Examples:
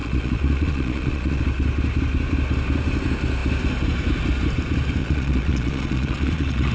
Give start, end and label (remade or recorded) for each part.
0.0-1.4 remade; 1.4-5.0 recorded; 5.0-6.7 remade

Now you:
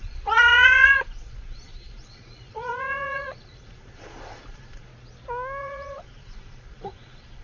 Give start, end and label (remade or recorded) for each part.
0.0-4.9 remade; 4.9-5.6 recorded; 5.6-7.4 remade

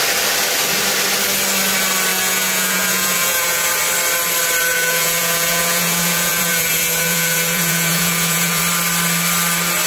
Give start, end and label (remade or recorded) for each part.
0.0-2.1 recorded; 2.1-3.7 remade; 3.7-4.7 recorded; 4.7-8.6 remade; 8.6-9.9 recorded

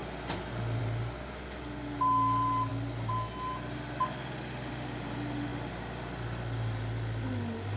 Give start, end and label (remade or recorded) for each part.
0.0-7.8 recorded

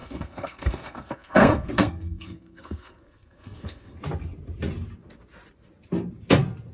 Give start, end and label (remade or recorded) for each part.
0.0-4.0 remade; 4.0-6.7 recorded